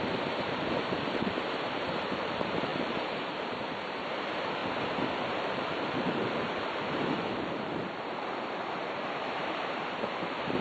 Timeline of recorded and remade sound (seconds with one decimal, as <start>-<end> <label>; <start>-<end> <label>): 0.0-4.6 remade; 4.6-5.2 recorded; 5.2-10.6 remade